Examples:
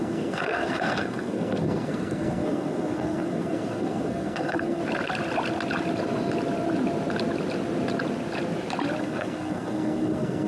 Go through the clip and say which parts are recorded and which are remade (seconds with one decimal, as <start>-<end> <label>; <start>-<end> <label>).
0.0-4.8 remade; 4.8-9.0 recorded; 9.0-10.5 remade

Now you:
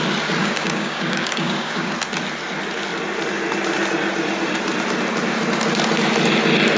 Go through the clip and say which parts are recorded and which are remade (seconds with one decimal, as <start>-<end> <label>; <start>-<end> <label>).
0.0-0.4 recorded; 0.4-1.9 remade; 1.9-6.8 recorded

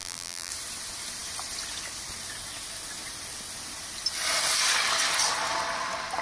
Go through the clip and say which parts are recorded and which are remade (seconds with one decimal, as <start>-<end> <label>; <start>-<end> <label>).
0.0-0.5 remade; 0.5-6.2 recorded

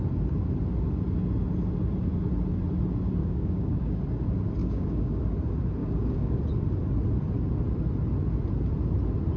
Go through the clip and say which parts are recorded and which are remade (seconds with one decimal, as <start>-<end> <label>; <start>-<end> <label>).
0.0-3.2 recorded; 3.2-4.0 remade; 4.0-4.6 recorded; 4.6-5.2 remade; 5.2-5.8 recorded; 5.8-6.4 remade; 6.4-9.4 recorded

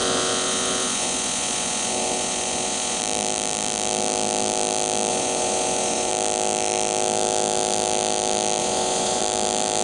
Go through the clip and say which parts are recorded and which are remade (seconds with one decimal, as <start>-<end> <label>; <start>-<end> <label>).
0.0-3.0 remade; 3.0-5.1 recorded; 5.1-6.1 remade; 6.1-8.6 recorded; 8.6-9.2 remade; 9.2-9.8 recorded

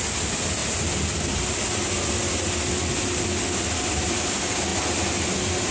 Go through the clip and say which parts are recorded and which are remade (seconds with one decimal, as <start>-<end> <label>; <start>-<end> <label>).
0.0-5.7 recorded

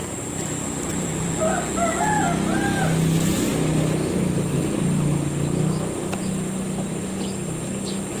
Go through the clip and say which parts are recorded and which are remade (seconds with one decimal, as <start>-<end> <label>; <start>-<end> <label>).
0.0-1.3 remade; 1.3-8.2 recorded